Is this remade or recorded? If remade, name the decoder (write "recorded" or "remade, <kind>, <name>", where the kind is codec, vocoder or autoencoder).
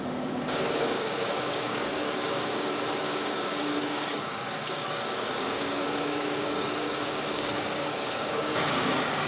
remade, codec, DAC